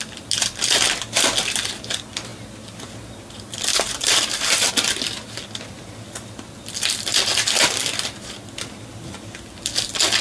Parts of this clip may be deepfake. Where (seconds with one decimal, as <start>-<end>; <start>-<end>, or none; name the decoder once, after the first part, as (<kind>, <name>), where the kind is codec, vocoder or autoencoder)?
3.7-4.7 (vocoder, BigVGAN v2)